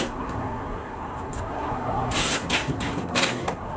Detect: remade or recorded remade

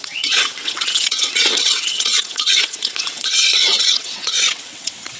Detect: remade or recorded remade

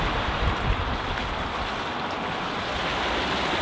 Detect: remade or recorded recorded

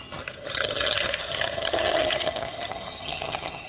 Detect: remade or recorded remade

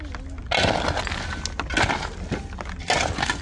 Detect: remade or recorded recorded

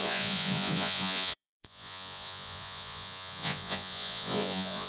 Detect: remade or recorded remade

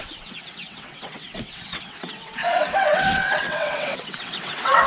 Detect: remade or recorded remade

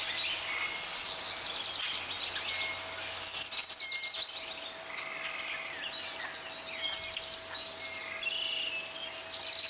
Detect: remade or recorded recorded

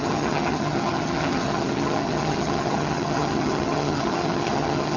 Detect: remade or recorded remade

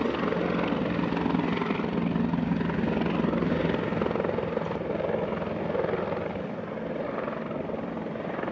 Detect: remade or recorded recorded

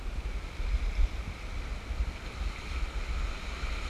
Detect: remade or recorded recorded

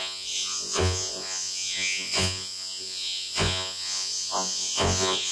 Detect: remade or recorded remade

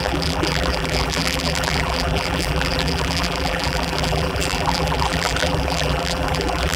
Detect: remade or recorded remade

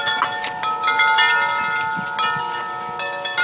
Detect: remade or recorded recorded